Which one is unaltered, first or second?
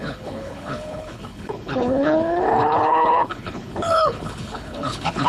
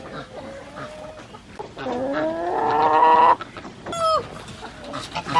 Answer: second